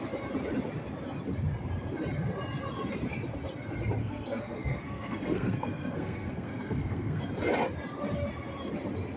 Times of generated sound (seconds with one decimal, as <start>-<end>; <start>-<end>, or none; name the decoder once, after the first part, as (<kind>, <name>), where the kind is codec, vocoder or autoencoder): 4.0-7.2 (codec, SNAC)